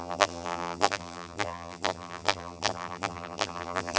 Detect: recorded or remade remade